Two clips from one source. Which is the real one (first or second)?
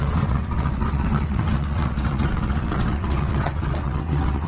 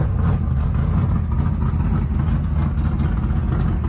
second